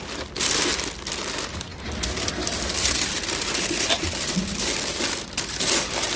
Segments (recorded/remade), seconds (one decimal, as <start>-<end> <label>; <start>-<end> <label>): 0.0-6.2 recorded